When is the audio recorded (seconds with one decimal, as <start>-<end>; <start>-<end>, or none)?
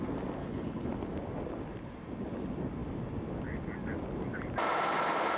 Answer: 0.0-0.4; 0.9-5.4